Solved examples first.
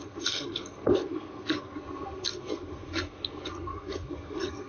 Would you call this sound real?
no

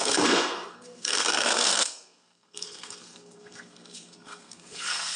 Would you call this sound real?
no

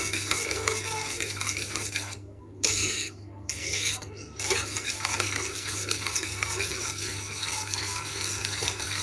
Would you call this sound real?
no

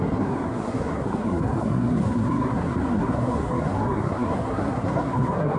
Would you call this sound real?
no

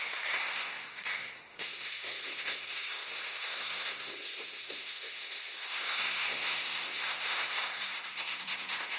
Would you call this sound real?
no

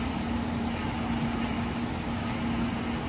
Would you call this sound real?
yes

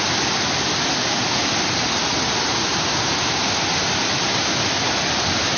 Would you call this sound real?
yes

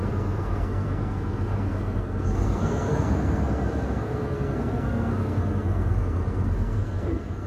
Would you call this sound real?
no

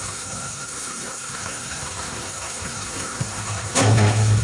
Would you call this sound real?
no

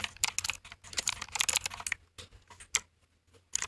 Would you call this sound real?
yes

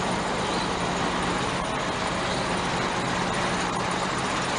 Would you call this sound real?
yes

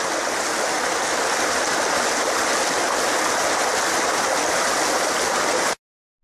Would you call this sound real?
yes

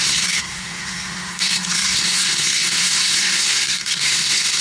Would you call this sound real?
no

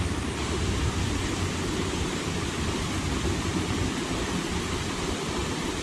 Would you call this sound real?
yes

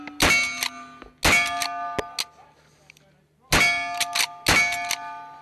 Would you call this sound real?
yes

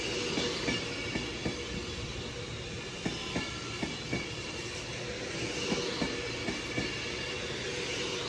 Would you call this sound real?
yes